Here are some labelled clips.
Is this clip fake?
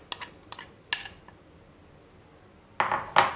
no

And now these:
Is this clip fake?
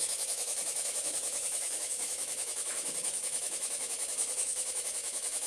yes